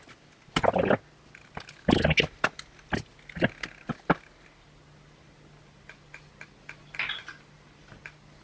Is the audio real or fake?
real